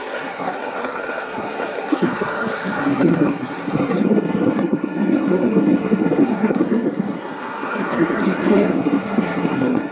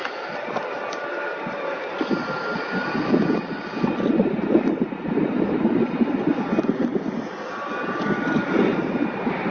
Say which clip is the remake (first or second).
first